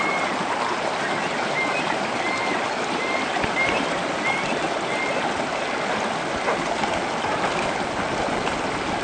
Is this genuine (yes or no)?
yes